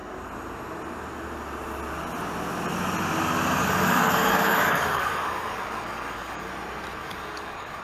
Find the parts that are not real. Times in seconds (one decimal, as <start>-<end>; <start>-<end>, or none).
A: 3.6-6.5; 7.0-7.8